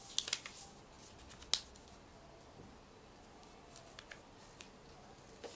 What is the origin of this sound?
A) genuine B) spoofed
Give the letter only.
A